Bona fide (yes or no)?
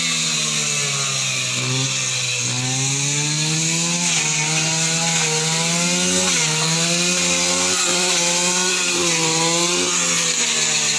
yes